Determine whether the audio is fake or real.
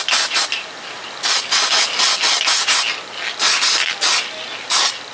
real